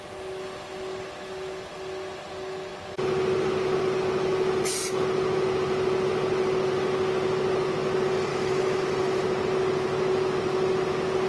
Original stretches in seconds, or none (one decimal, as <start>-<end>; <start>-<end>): 0.0-8.3; 8.8-11.3